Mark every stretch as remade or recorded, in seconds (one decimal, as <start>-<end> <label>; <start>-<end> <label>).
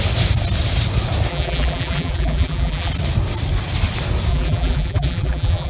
0.0-1.3 recorded; 1.3-2.9 remade; 2.9-4.3 recorded; 4.3-5.7 remade